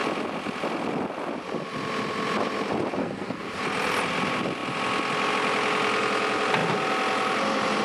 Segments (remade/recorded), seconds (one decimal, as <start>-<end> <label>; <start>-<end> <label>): 0.0-3.0 recorded; 3.0-3.6 remade; 3.6-7.8 recorded